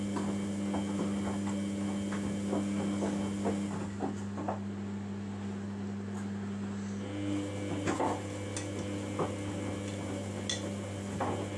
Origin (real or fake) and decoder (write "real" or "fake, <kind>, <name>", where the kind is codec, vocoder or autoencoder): real